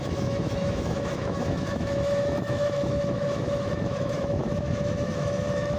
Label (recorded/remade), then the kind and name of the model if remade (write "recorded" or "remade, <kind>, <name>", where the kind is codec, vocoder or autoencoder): remade, autoencoder, DAC-VAE